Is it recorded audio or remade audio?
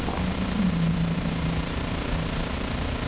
recorded